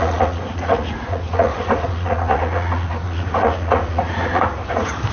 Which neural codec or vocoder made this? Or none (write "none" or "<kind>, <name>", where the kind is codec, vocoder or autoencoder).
vocoder, Vocos